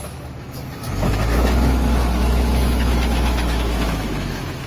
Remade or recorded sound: remade